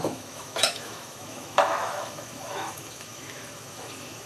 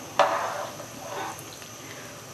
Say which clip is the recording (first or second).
second